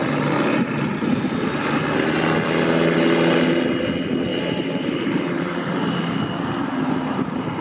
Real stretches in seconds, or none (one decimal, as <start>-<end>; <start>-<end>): 0.0-4.3